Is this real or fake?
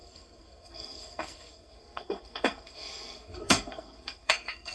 fake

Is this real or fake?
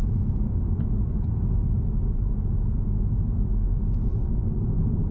real